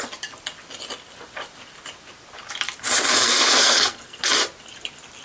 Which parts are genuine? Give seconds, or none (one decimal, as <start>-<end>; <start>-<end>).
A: 0.0-3.2; 4.2-5.2